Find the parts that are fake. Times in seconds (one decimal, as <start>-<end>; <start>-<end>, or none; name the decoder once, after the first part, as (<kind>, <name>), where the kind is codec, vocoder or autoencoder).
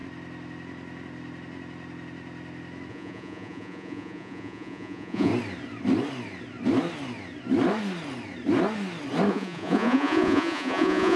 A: 2.9-5.3 (vocoder, Vocos); 9.3-11.2